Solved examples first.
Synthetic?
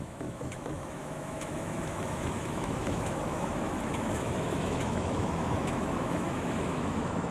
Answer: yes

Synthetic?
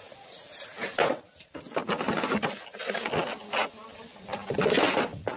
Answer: no